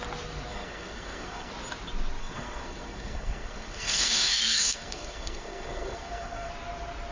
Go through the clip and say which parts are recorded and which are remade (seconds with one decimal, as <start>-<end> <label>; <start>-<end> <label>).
0.0-0.5 recorded; 0.5-1.5 remade; 1.5-2.2 recorded; 2.2-6.5 remade; 6.5-7.1 recorded